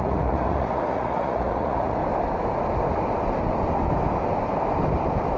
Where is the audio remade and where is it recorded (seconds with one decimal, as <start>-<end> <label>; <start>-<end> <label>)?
0.0-2.0 remade; 2.0-5.4 recorded